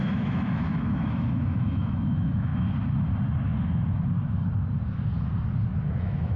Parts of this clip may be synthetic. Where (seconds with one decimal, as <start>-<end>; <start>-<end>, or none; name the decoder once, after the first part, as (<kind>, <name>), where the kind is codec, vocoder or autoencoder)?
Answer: 0.0-2.5 (autoencoder, DAC-VAE); 6.0-6.4